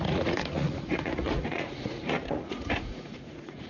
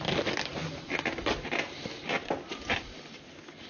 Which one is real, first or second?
second